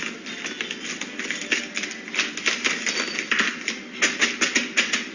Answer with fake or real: real